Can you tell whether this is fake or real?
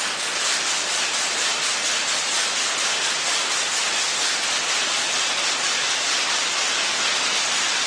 real